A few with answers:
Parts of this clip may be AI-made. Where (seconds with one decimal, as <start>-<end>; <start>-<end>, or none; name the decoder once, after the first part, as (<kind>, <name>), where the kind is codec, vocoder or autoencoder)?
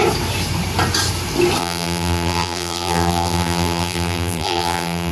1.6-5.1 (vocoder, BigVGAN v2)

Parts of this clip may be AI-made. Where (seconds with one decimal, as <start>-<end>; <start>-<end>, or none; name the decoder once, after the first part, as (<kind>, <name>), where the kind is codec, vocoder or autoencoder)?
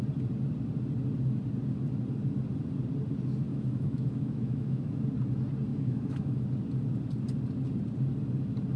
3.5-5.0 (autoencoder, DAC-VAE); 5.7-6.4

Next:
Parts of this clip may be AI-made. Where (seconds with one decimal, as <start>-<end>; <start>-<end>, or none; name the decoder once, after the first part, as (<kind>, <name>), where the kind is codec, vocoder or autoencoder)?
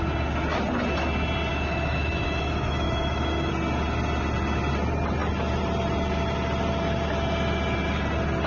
1.5-3.5 (autoencoder, DAC-VAE)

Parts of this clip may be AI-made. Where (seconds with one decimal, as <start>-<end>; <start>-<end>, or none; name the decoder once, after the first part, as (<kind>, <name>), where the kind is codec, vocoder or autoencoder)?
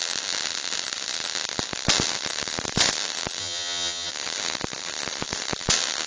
3.4-4.1 (vocoder, HiFi-GAN)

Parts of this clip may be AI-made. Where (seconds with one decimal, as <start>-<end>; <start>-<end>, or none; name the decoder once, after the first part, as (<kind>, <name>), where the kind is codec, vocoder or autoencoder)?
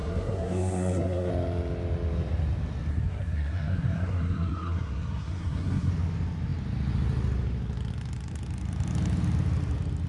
0.0-1.3 (codec, SNAC); 2.9-5.9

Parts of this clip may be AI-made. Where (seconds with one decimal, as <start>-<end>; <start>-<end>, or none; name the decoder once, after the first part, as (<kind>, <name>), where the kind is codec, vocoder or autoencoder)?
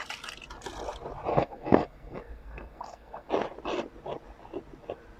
1.3-3.3 (codec, SNAC)